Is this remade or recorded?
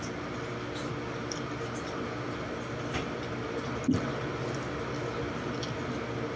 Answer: recorded